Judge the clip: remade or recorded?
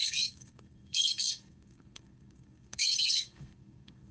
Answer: remade